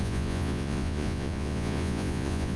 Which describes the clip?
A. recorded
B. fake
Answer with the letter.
B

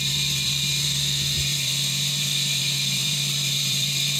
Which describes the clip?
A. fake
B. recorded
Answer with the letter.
A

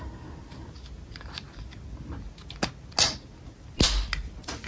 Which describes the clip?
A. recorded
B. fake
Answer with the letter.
A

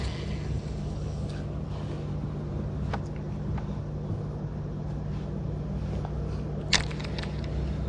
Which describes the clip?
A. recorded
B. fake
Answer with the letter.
A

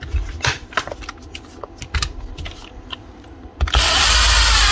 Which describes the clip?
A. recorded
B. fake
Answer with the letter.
A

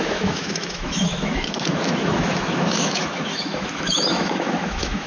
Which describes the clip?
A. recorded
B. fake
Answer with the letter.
B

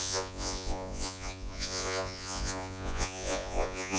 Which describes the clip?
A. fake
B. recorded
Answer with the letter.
A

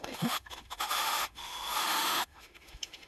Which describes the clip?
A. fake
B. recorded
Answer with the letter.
A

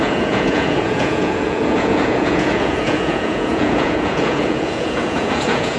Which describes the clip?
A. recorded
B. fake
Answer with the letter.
B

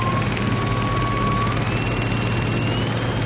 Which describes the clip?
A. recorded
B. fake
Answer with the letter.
A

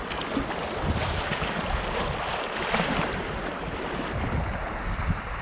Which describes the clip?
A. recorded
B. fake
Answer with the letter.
A